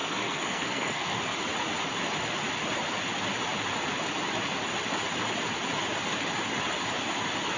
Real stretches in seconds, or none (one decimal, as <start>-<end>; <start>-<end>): 1.2-7.6